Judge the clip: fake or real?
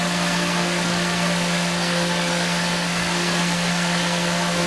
fake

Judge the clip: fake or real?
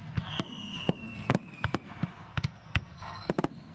fake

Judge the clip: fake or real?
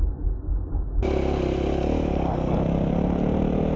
real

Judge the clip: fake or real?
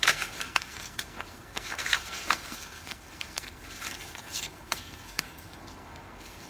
fake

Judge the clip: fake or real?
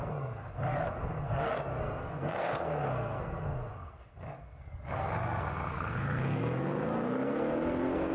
fake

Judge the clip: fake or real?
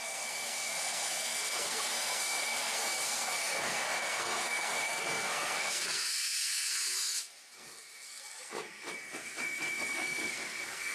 fake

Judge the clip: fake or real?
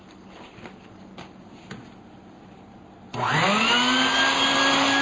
real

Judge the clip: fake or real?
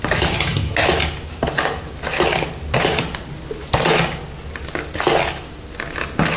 real